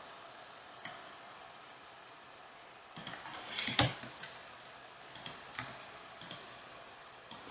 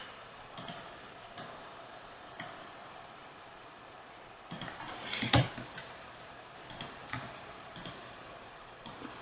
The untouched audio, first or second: first